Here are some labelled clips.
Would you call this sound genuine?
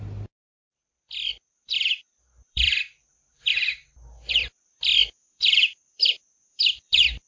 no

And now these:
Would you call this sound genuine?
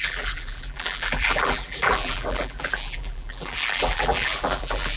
no